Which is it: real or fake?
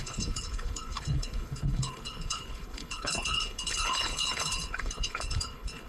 fake